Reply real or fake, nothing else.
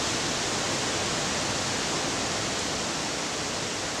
real